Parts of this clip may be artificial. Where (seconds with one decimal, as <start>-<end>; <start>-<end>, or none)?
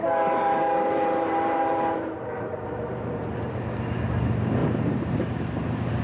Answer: 0.0-3.6; 4.6-5.1